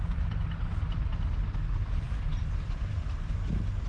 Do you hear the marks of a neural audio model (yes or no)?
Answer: no